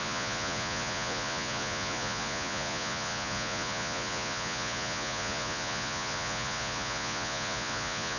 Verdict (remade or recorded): remade